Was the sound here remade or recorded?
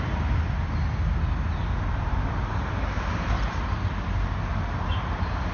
recorded